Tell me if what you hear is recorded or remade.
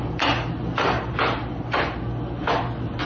recorded